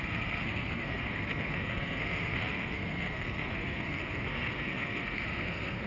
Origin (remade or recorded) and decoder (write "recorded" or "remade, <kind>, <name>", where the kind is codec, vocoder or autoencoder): remade, codec, SNAC